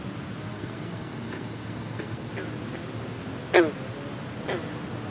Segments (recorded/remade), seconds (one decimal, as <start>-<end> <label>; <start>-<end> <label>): 0.0-0.5 recorded; 0.5-2.3 remade; 2.3-5.1 recorded